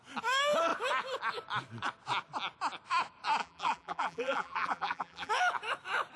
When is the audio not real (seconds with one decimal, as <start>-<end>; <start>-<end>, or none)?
3.4-5.3